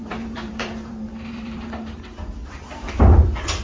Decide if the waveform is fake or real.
fake